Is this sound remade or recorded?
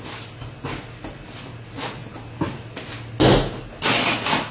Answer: recorded